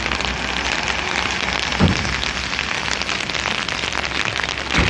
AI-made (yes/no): no